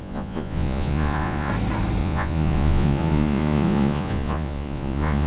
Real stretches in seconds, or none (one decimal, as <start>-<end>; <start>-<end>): 1.5-2.0